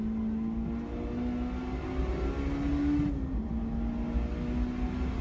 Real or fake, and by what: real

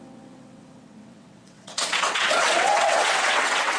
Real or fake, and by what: fake, vocoder, WaveNeXt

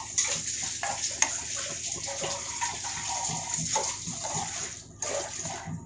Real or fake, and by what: real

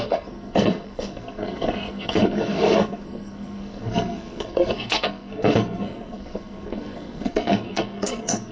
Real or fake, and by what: fake, codec, SNAC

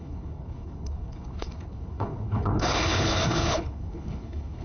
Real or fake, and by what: fake, codec, HILCodec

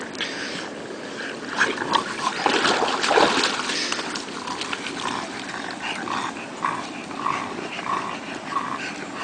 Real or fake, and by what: real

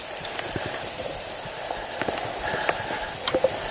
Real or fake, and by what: real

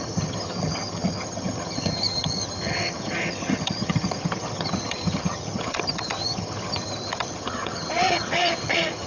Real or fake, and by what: fake, vocoder, HiFi-GAN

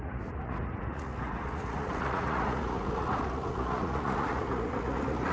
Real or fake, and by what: fake, vocoder, Vocos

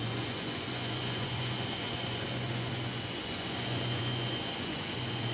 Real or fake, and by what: fake, vocoder, Vocos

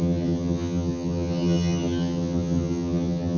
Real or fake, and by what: fake, vocoder, HiFi-GAN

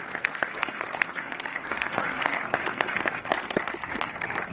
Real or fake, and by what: fake, codec, SNAC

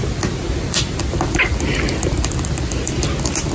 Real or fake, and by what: real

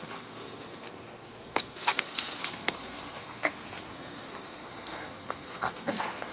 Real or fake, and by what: fake, codec, SNAC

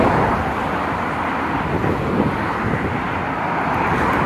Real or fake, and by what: real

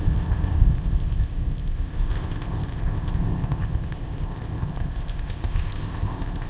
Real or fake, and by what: fake, codec, ZipCodec